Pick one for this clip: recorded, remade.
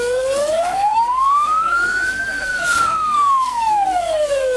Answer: remade